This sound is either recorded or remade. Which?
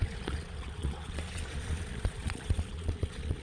remade